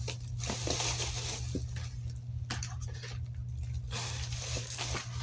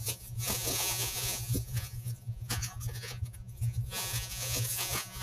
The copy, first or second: second